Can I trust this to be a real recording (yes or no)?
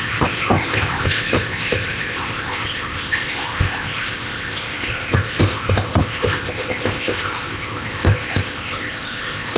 no